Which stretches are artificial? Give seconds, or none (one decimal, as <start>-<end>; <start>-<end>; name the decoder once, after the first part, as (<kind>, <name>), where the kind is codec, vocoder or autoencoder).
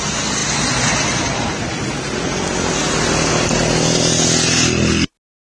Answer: none